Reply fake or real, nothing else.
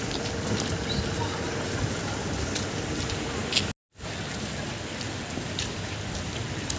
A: real